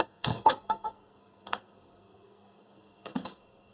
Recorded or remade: remade